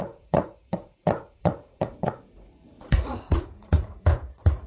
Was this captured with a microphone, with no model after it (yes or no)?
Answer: no